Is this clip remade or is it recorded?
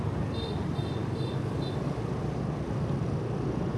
recorded